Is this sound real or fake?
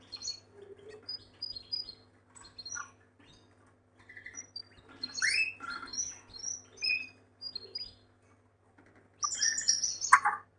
real